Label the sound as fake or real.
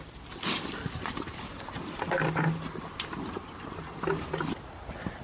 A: real